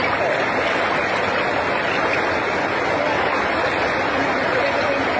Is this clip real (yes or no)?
yes